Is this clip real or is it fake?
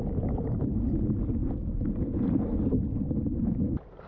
real